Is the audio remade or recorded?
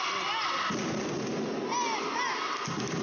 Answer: recorded